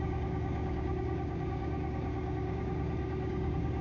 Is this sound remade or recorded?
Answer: remade